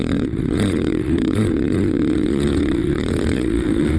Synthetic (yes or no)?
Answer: yes